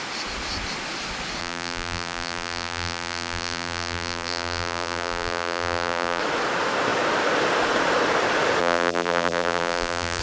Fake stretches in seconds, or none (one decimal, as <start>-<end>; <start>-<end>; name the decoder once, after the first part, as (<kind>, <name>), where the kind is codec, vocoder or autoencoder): 1.4-6.2 (vocoder, BigVGAN v2); 8.6-10.2